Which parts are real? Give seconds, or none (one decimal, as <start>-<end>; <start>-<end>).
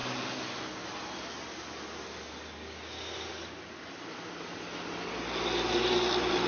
0.0-6.5